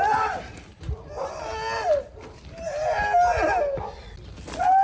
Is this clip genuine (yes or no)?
yes